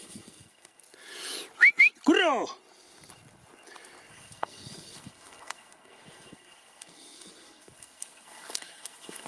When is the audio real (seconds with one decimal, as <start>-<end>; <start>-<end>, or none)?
0.8-4.1